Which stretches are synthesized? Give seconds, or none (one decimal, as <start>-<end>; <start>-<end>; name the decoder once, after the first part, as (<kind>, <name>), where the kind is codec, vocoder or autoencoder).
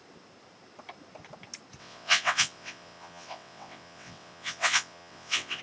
1.8-5.6 (vocoder, WaveNeXt)